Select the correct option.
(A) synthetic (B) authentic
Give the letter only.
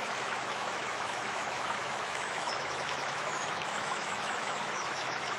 A